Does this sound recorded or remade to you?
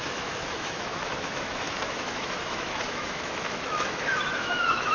remade